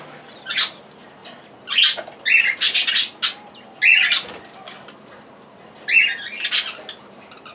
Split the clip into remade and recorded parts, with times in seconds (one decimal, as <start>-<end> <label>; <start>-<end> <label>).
0.0-7.5 recorded

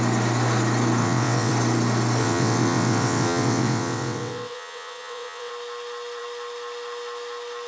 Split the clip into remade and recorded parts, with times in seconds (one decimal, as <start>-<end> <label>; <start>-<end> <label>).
0.0-1.0 recorded; 1.0-1.5 remade; 1.5-2.2 recorded; 2.2-5.5 remade; 5.5-7.7 recorded

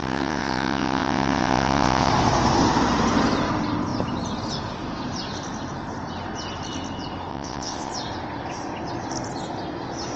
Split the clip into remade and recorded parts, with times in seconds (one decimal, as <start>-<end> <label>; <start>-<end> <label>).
0.0-2.1 remade; 2.1-7.3 recorded; 7.3-7.9 remade; 7.9-10.2 recorded

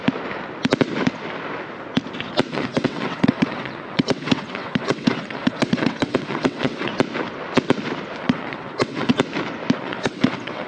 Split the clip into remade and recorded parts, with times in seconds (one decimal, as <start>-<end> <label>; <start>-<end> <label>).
0.0-2.5 recorded; 2.5-6.9 remade; 6.9-8.2 recorded; 8.2-9.1 remade; 9.1-9.8 recorded; 9.8-10.7 remade

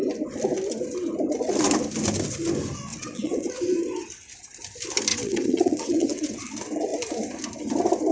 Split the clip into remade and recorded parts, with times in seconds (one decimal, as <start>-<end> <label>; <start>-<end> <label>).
0.0-2.9 recorded; 2.9-3.5 remade; 3.5-5.1 recorded; 5.1-6.4 remade; 6.4-8.1 recorded